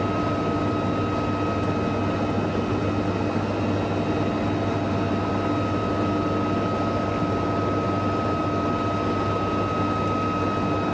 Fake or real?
real